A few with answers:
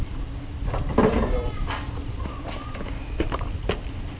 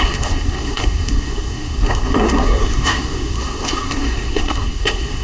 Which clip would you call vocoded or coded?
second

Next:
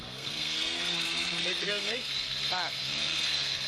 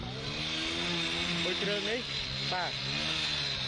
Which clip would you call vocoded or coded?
first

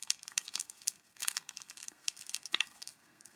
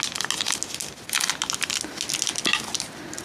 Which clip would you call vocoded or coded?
first